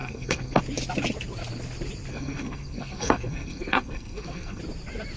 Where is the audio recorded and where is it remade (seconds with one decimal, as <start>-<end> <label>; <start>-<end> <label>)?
0.0-0.6 remade; 0.6-2.1 recorded; 2.1-4.6 remade; 4.6-5.2 recorded